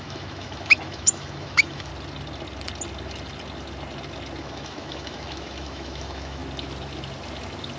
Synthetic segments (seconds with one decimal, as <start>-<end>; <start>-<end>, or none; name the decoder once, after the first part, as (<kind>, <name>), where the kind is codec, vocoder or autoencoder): 0.0-1.9 (autoencoder, DAC-VAE); 4.4-6.4